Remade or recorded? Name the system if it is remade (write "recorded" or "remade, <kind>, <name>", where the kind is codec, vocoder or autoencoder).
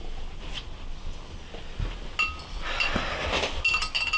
recorded